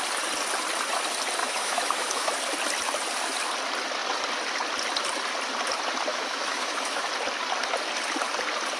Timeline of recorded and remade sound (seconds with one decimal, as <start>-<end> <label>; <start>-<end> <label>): 0.0-1.4 recorded; 1.4-2.3 remade; 2.3-6.1 recorded; 6.1-7.1 remade; 7.1-8.8 recorded